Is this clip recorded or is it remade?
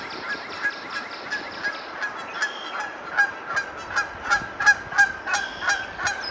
recorded